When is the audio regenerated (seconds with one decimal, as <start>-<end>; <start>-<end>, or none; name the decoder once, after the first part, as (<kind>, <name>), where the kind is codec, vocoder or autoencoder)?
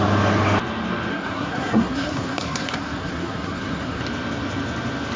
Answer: 1.1-4.0 (codec, SNAC)